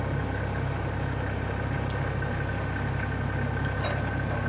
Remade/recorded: recorded